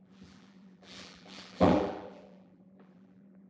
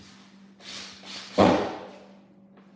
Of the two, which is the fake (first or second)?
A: first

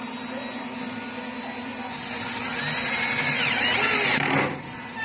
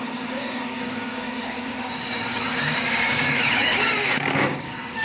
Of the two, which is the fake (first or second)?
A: second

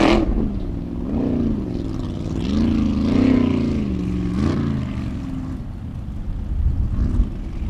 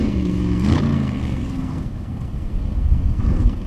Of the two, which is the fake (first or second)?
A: second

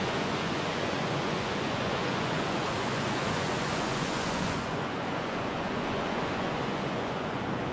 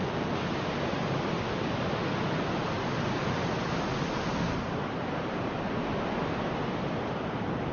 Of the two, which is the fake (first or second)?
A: first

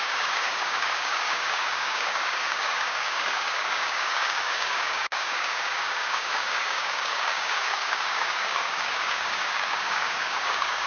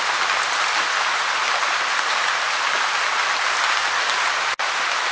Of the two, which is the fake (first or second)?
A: first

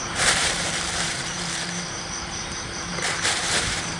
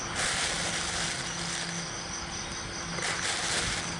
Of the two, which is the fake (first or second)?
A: first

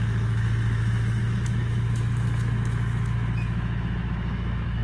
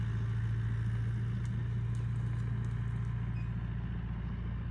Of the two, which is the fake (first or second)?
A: first